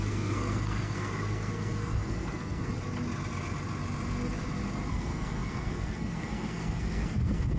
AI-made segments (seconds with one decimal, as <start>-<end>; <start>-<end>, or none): 0.0-2.7; 4.9-7.6

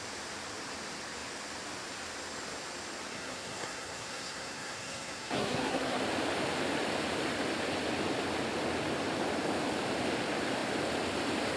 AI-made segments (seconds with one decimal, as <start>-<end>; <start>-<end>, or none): 3.1-6.0

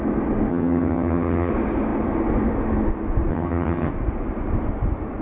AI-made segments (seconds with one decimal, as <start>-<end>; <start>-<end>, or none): 0.5-1.5; 3.3-3.9

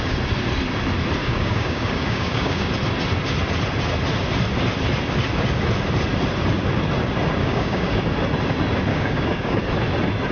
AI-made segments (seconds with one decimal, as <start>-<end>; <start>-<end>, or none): 1.2-2.7; 7.4-8.0; 8.9-9.6